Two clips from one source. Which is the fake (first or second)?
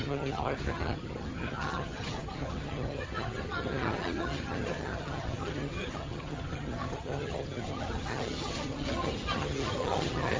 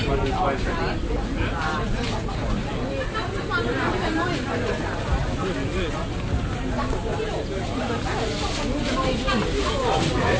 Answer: first